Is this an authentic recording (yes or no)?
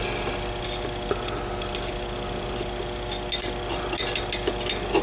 yes